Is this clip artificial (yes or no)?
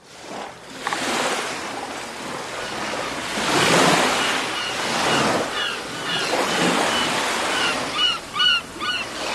no